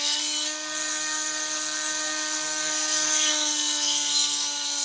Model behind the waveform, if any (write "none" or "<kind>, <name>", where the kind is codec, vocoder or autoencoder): codec, SNAC